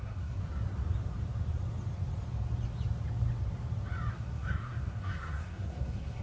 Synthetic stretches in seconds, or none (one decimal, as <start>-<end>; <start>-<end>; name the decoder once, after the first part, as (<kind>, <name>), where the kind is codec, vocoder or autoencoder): 0.0-0.4 (codec, SNAC); 4.1-6.2